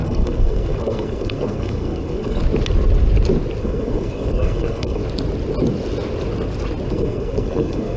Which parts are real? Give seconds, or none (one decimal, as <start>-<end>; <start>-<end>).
2.4-3.6; 5.0-6.9